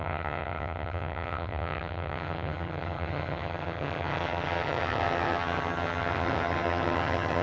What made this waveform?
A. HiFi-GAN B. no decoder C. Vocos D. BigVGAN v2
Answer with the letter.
A